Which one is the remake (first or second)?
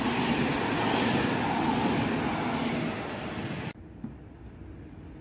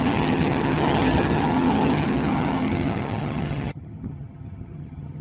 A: second